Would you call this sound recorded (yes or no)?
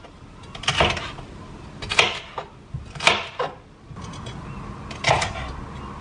yes